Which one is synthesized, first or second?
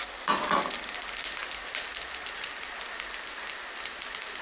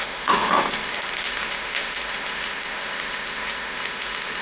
second